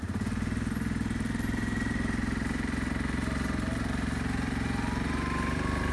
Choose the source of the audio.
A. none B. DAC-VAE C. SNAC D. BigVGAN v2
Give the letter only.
D